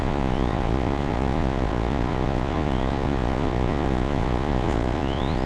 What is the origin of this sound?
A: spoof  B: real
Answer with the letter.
A